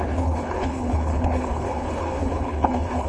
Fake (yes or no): yes